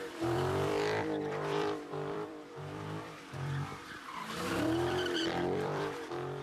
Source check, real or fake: fake